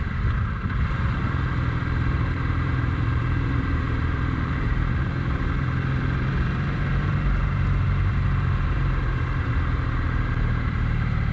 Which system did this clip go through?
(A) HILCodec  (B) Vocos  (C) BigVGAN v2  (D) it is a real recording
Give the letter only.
C